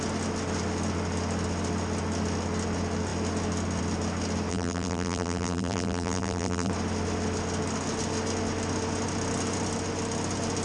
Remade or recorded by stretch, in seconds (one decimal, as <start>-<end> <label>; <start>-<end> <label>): 0.0-4.5 recorded; 4.5-6.7 remade; 6.7-10.6 recorded